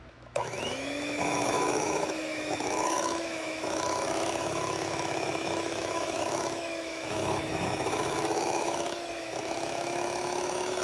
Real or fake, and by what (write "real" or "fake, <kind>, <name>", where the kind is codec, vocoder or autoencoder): fake, autoencoder, DAC-VAE